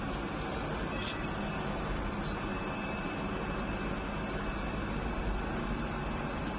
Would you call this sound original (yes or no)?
yes